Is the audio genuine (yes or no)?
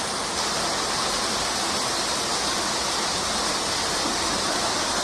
yes